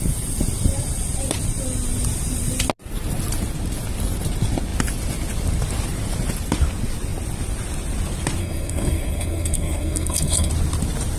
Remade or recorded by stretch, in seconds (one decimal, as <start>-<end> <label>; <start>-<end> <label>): 0.0-8.4 recorded; 8.4-10.5 remade; 10.5-11.2 recorded